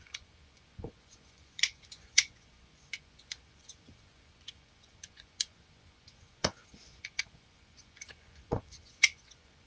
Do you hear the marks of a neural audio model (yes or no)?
yes